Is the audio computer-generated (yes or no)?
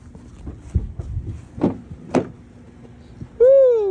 no